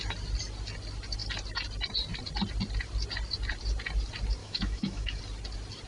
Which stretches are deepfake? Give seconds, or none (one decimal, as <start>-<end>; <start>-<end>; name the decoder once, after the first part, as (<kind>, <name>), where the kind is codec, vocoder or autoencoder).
4.4-5.2 (autoencoder, DAC-VAE)